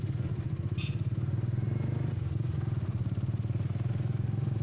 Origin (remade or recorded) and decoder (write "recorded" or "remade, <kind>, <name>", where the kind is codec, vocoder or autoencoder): recorded